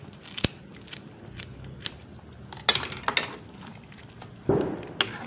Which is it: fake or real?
real